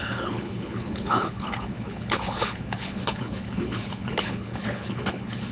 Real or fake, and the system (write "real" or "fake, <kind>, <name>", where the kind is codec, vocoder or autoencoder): fake, codec, HILCodec